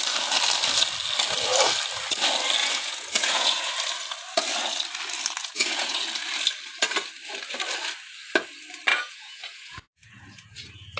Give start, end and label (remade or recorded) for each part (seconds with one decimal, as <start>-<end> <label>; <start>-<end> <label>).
0.0-2.6 recorded; 2.6-3.7 remade; 3.7-5.4 recorded; 5.4-6.0 remade; 6.0-8.9 recorded; 8.9-11.0 remade